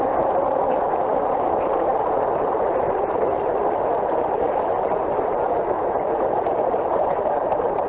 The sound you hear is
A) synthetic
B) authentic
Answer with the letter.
B